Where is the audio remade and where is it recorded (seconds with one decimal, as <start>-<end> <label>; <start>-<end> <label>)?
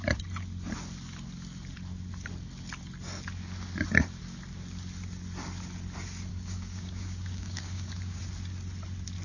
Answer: 0.0-6.3 recorded; 6.3-8.2 remade; 8.2-9.2 recorded